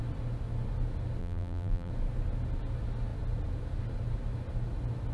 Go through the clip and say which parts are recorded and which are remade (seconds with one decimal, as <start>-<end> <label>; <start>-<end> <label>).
0.0-1.2 recorded; 1.2-1.9 remade; 1.9-5.1 recorded